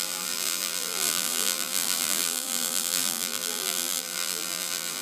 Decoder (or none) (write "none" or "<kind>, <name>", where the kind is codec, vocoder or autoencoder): vocoder, BigVGAN v2